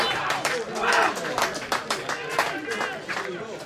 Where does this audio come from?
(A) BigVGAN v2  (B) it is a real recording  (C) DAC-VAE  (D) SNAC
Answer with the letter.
B